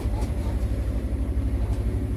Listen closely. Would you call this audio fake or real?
fake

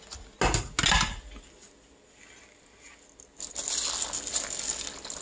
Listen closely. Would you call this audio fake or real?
real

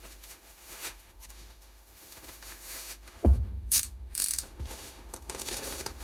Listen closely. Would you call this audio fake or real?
fake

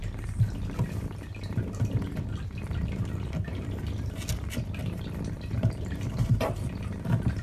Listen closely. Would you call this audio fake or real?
real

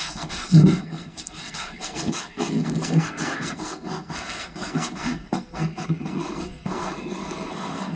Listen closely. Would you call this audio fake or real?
fake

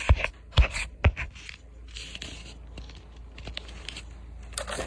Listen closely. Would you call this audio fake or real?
real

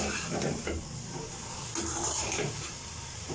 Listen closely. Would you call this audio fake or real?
fake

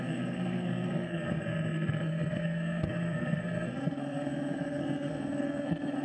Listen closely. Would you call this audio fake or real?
fake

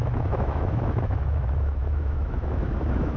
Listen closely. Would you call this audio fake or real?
fake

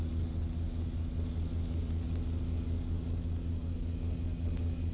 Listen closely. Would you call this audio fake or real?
real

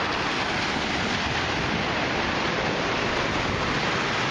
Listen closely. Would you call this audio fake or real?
real